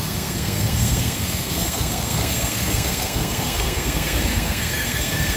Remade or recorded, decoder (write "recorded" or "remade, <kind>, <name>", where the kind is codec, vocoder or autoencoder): remade, codec, SNAC